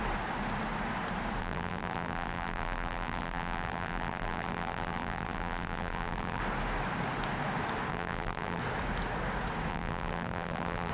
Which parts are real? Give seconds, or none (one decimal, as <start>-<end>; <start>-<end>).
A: 0.0-1.4; 6.4-7.9; 8.6-9.7